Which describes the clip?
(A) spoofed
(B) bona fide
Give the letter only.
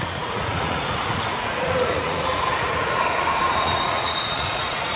A